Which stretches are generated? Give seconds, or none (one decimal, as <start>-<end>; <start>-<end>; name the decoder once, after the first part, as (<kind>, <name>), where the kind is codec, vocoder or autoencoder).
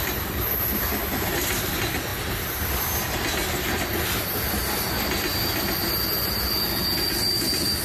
none